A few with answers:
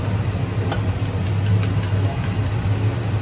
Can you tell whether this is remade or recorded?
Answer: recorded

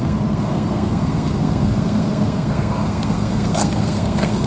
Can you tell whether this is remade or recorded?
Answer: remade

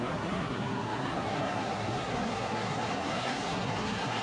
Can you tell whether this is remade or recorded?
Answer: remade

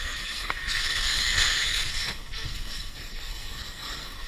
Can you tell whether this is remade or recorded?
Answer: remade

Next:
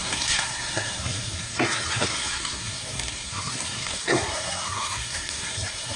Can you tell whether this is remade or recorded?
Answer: remade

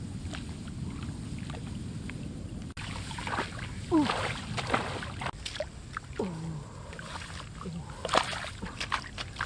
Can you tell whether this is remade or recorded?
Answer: recorded